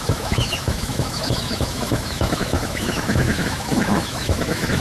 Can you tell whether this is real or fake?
fake